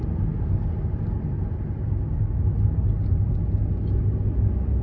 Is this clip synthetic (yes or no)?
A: no